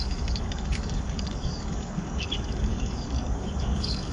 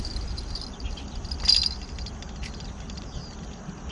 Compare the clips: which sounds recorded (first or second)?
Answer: second